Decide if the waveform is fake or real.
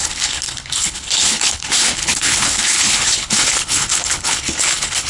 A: fake